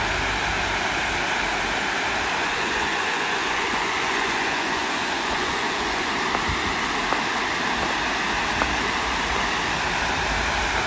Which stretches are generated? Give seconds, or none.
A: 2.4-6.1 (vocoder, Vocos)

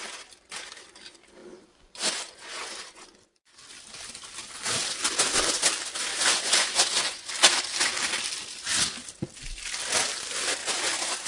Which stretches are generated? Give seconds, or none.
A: 1.4-3.6 (vocoder, Vocos); 6.1-7.3; 10.6-11.3

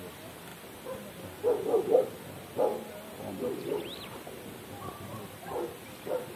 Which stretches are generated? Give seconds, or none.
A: none